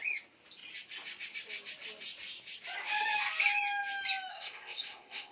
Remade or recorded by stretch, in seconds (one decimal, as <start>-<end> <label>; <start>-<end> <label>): 0.0-4.3 recorded; 4.3-5.3 remade